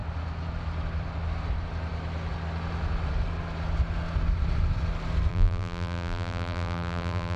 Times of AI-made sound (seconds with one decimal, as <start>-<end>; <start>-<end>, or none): 5.3-7.4